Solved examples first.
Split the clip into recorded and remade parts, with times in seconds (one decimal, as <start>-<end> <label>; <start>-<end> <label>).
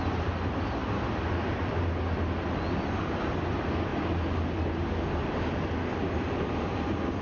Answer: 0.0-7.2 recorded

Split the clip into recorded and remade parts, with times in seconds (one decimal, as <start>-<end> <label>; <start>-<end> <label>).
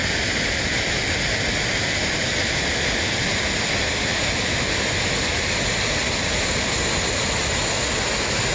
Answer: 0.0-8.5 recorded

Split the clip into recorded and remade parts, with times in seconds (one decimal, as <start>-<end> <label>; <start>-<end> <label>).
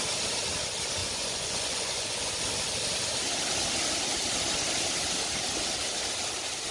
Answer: 0.0-1.0 recorded; 1.0-2.3 remade; 2.3-6.7 recorded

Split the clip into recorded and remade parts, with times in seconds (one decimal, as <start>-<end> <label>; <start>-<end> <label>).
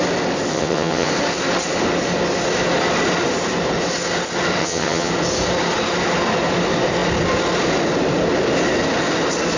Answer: 0.0-0.5 recorded; 0.5-1.1 remade; 1.1-4.6 recorded; 4.6-5.1 remade; 5.1-9.6 recorded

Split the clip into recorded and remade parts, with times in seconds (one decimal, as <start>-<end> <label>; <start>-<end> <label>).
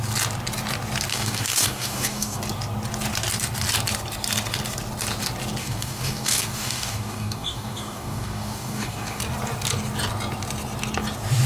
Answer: 0.0-1.1 recorded; 1.1-2.4 remade; 2.4-5.6 recorded; 5.6-9.2 remade; 9.2-11.5 recorded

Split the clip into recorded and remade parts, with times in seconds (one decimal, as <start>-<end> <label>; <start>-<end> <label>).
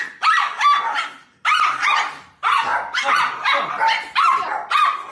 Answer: 0.0-5.1 recorded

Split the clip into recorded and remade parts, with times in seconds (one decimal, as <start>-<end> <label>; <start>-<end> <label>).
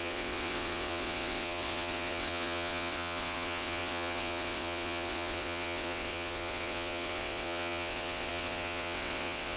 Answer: 0.0-9.6 remade